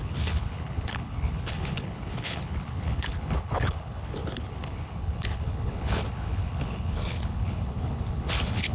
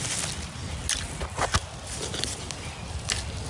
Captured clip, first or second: second